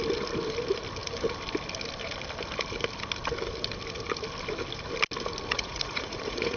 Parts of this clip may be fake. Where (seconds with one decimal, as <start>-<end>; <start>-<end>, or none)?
5.5-6.6